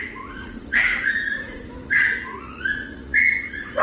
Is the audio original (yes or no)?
no